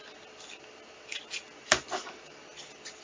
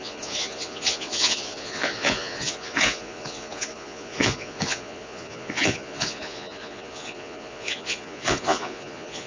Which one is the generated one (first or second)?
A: second